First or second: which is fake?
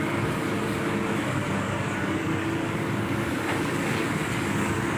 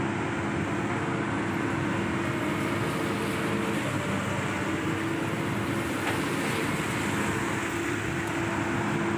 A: first